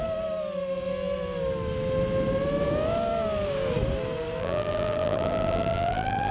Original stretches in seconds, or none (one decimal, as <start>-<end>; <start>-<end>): 0.0-4.4

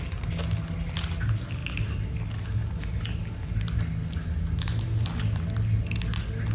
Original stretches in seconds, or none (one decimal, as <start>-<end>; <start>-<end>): 0.0-6.5

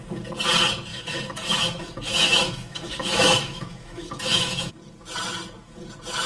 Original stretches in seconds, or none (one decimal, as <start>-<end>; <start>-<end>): 0.0-0.9; 4.7-6.3

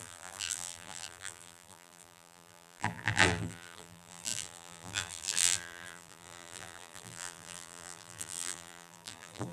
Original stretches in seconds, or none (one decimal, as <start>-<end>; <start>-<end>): none

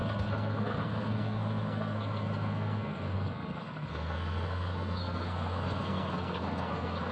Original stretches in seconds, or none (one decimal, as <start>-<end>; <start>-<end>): none

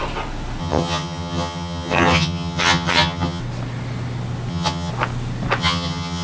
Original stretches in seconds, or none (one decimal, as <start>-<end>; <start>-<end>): 0.0-0.6; 3.4-4.5; 4.9-5.6